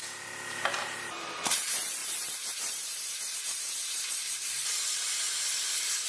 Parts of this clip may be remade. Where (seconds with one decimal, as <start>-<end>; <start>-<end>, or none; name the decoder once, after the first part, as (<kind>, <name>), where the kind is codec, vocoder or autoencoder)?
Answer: 0.7-1.5 (vocoder, BigVGAN v2); 2.0-6.1